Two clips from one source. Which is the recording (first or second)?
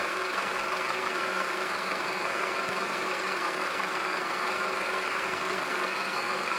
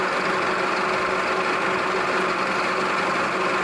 second